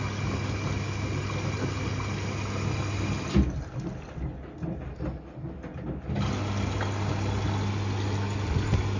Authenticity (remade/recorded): recorded